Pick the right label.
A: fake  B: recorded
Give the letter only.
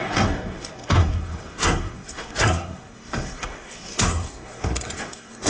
A